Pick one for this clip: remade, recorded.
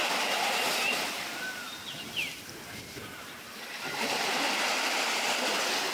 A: remade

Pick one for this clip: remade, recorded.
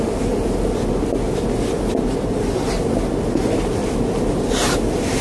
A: recorded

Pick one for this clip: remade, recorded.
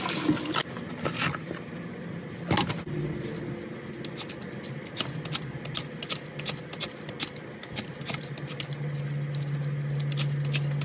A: recorded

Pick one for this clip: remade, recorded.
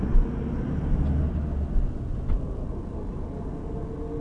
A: recorded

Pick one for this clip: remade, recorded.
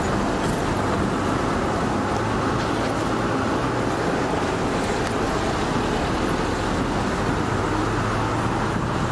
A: recorded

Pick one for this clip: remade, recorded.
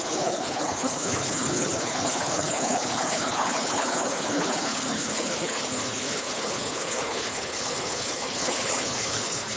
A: remade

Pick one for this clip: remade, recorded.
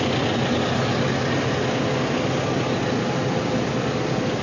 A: recorded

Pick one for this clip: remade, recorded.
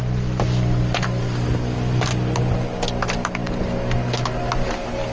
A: recorded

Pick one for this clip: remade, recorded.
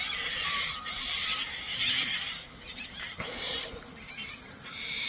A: remade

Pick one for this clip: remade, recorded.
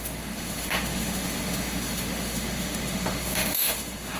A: remade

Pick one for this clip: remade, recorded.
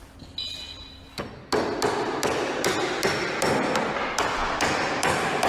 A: recorded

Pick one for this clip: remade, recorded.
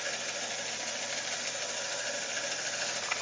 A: recorded